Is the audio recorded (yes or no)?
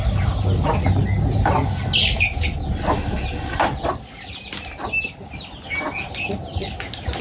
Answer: yes